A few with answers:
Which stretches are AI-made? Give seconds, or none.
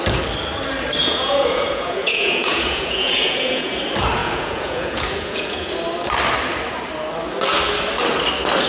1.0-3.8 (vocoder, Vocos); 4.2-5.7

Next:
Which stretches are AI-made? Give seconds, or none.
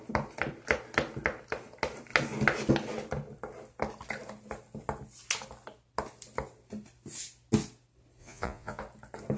8.2-8.8 (vocoder, Vocos)